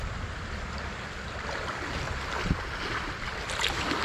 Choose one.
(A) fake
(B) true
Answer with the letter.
B